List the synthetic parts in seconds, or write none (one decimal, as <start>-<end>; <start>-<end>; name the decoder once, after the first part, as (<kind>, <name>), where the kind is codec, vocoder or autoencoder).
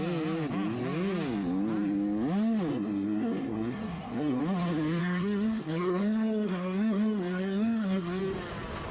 2.7-4.4 (codec, SNAC); 5.0-8.2